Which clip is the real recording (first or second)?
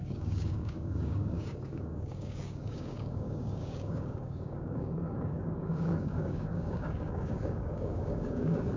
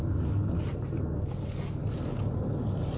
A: second